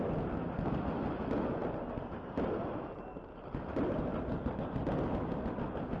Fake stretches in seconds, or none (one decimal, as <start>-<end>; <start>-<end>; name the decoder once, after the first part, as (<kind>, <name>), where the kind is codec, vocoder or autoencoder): none